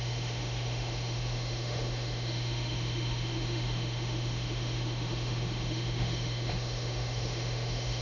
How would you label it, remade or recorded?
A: remade